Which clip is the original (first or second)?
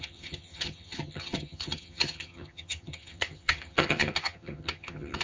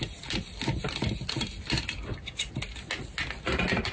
second